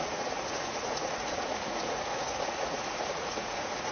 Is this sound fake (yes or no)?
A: yes